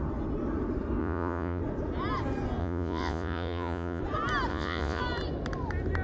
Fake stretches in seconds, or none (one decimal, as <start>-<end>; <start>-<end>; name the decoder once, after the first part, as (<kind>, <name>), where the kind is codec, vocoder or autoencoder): 1.0-1.6 (vocoder, Vocos); 2.6-4.0; 4.5-5.0